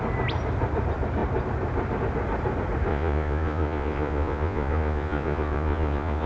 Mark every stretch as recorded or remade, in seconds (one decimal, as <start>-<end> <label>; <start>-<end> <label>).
0.0-2.9 recorded; 2.9-6.3 remade